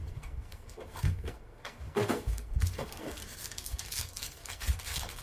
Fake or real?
fake